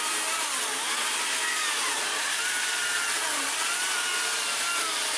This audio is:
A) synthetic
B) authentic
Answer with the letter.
B